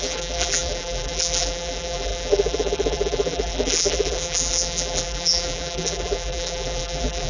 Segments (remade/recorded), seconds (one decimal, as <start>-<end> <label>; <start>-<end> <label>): 0.0-7.3 remade